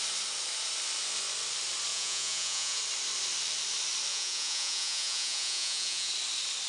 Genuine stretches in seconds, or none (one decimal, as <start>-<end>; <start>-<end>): 0.0-1.9; 2.8-4.1; 6.1-6.7